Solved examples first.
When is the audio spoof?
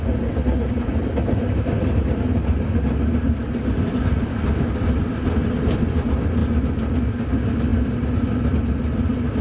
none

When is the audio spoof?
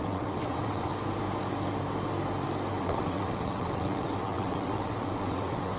0.0-0.9 (vocoder, WaveNeXt); 2.8-5.8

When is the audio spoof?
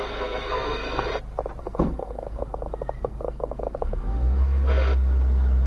0.0-1.1 (codec, SNAC); 1.6-5.7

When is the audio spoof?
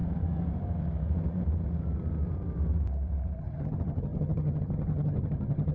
3.4-5.7 (vocoder, HiFi-GAN)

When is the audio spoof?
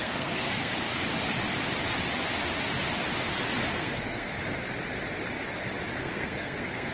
0.0-0.7 (codec, SNAC); 3.7-4.3; 6.0-6.9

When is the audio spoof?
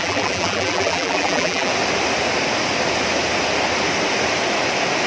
0.0-1.7 (vocoder, BigVGAN v2)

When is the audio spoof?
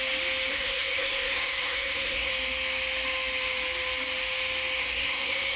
0.5-2.3 (codec, SNAC); 4.8-5.6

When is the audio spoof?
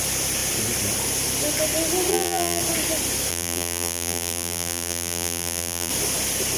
2.1-2.6 (vocoder, BigVGAN v2); 3.3-5.9